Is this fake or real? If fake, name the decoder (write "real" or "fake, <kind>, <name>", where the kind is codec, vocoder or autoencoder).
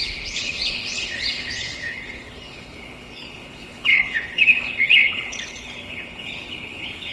fake, codec, HILCodec